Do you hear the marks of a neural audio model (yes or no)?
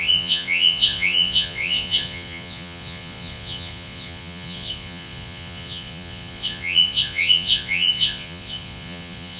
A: yes